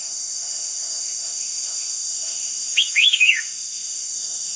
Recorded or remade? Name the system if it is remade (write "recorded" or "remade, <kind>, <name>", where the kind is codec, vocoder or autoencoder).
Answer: remade, autoencoder, DAC-VAE